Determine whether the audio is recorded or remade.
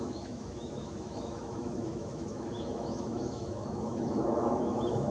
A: remade